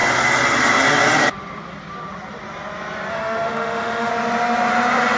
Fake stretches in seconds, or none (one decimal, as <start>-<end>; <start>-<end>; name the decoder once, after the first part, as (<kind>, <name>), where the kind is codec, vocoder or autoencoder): 3.1-4.1 (autoencoder, DAC-VAE)